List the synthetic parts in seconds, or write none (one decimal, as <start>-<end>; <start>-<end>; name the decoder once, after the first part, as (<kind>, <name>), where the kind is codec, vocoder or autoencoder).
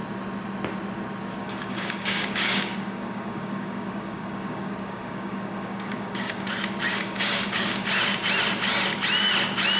1.4-6.5 (codec, DAC); 6.9-7.9